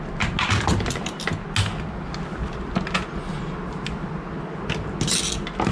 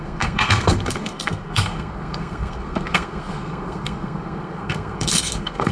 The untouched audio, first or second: first